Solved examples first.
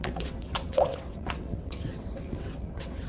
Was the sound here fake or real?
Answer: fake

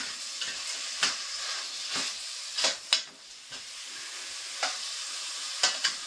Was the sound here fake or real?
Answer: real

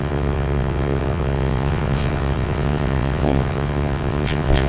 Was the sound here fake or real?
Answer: fake